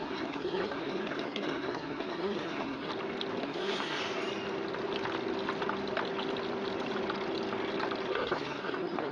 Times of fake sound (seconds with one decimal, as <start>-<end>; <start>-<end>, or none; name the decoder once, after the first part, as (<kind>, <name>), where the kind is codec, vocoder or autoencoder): 0.0-2.9 (codec, SNAC); 3.4-4.0; 8.1-9.1